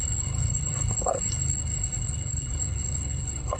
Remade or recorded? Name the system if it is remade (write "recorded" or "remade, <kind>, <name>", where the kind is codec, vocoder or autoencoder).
remade, codec, HILCodec